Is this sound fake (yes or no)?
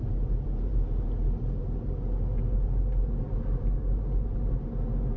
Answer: no